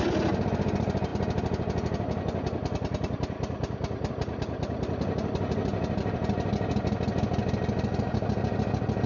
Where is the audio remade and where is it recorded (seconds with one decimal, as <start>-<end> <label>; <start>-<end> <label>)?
0.0-9.1 recorded